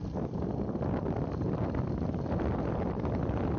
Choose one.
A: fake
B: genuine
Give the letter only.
B